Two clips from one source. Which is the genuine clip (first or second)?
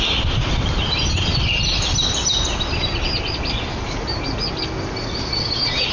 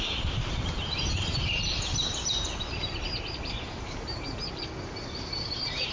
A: first